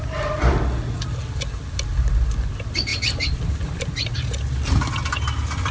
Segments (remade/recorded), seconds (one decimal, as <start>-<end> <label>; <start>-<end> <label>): 0.0-5.7 recorded